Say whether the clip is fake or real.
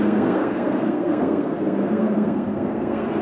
fake